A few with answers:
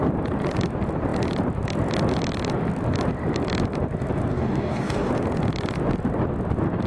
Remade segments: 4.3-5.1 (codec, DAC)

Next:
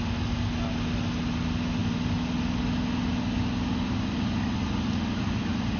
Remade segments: none

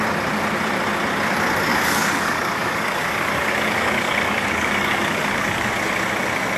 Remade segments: 1.7-5.7 (codec, DAC)

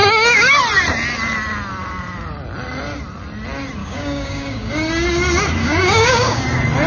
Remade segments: 0.0-0.6 (codec, DAC); 3.8-4.7; 5.6-6.4

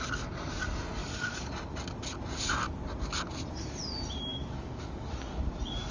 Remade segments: 1.0-1.5 (codec, DAC); 4.3-5.1